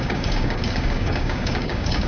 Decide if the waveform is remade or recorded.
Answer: remade